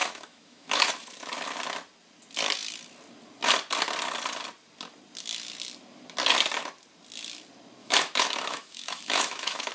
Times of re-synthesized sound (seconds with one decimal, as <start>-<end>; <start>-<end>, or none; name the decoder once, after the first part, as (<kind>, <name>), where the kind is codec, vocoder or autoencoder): 0.0-0.8 (autoencoder, DAC-VAE); 7.8-9.7

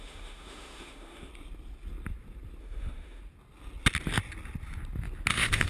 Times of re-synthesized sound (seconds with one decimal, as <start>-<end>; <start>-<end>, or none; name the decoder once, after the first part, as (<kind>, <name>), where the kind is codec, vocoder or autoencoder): 0.0-1.3 (autoencoder, DAC-VAE); 2.6-3.2; 5.3-5.7